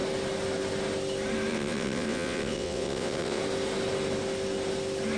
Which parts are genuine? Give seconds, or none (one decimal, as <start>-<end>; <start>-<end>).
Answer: 0.0-1.5; 3.4-5.2